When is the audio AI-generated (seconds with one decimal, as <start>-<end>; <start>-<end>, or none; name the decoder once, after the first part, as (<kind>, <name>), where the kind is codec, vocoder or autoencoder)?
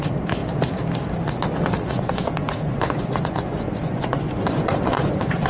0.0-0.4 (vocoder, Vocos); 1.8-5.5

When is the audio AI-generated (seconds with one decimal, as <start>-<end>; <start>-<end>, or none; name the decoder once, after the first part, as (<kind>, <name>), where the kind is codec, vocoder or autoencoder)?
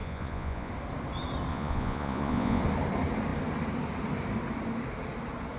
0.0-0.7 (vocoder, Vocos); 1.5-2.6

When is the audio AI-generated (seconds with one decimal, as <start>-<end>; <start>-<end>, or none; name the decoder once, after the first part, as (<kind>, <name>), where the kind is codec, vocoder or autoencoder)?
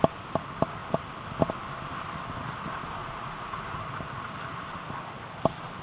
3.0-3.9 (vocoder, Vocos)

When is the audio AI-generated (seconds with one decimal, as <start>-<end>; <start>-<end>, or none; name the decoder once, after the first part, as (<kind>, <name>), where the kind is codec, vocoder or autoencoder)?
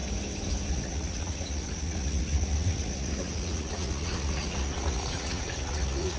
0.7-6.2 (vocoder, Vocos)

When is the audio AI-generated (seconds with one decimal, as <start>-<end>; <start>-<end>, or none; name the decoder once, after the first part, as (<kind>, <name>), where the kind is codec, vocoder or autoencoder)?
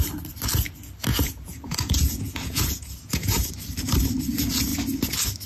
1.1-3.5 (vocoder, Vocos)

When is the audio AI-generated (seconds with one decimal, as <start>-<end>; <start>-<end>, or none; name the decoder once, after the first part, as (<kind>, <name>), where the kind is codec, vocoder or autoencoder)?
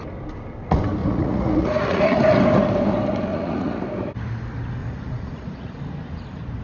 1.0-2.2 (vocoder, Vocos); 3.3-3.8; 4.8-5.8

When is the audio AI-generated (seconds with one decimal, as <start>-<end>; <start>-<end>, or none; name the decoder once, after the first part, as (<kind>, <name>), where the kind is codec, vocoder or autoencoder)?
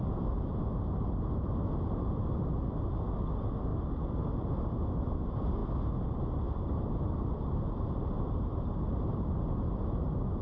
none